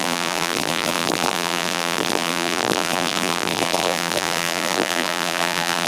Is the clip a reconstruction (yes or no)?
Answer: yes